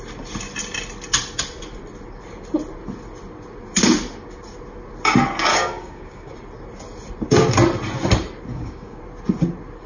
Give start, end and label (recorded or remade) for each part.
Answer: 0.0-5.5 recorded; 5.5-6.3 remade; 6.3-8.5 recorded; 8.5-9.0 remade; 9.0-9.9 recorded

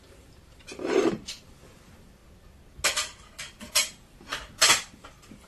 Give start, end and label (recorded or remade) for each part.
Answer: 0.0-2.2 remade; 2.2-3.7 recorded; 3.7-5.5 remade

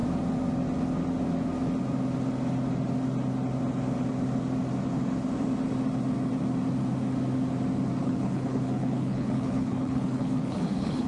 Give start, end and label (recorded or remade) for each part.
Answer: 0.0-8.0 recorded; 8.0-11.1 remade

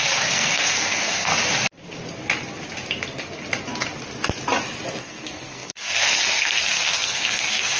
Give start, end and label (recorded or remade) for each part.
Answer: 0.0-1.3 remade; 1.3-5.0 recorded; 5.0-7.8 remade

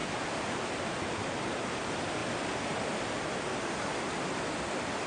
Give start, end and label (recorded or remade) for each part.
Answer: 0.0-5.1 recorded

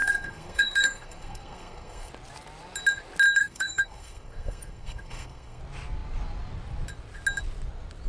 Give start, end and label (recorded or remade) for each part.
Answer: 0.0-2.1 remade; 2.1-3.4 recorded; 3.4-5.6 remade; 5.6-8.1 recorded